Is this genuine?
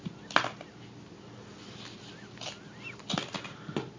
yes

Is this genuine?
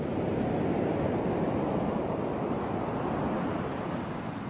yes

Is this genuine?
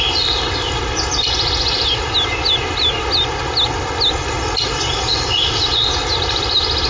yes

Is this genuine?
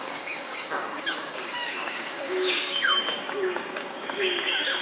no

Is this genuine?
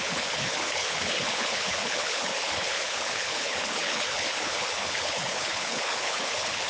no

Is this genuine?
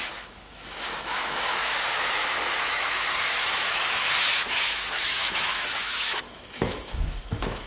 no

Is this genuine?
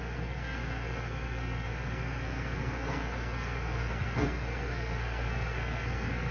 no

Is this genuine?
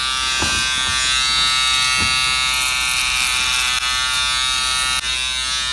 yes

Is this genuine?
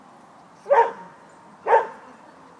yes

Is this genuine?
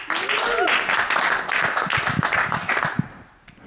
yes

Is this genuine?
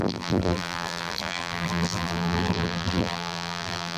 no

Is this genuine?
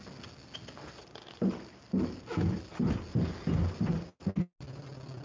yes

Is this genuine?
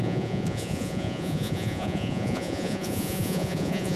no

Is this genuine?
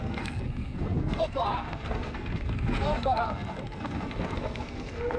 no